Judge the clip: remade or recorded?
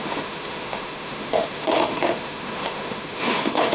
remade